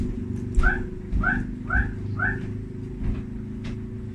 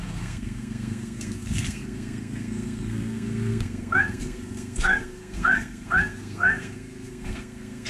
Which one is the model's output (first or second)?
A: second